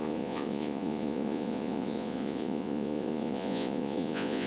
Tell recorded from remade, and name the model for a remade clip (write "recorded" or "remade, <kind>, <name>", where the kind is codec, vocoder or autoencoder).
remade, vocoder, Vocos